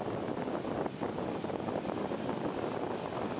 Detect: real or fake real